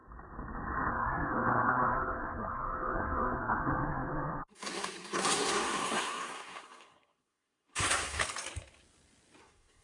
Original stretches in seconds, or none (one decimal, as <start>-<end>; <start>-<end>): 0.0-0.9; 8.2-9.4